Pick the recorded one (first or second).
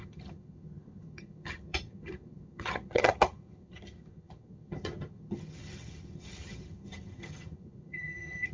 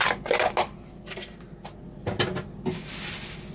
second